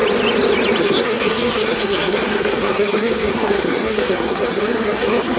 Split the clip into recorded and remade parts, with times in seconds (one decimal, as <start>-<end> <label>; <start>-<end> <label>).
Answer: 0.0-0.8 recorded; 0.8-5.4 remade